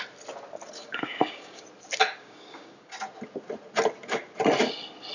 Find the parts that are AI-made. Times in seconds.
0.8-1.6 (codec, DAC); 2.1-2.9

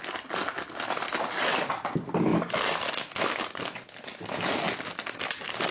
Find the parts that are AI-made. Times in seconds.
none

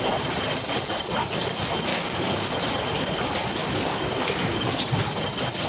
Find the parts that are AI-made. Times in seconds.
1.9-2.5 (codec, DAC); 3.6-4.8

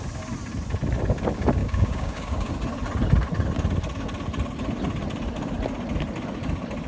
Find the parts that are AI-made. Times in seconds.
1.6-2.5 (codec, DAC)

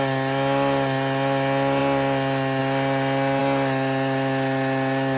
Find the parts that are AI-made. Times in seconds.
none

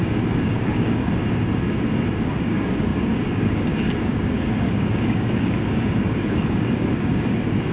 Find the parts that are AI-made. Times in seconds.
0.0-1.2 (codec, DAC); 2.4-7.7

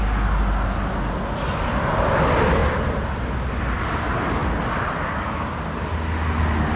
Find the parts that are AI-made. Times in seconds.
none

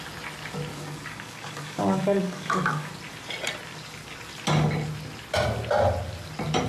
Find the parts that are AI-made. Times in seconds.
0.7-2.9 (codec, DAC)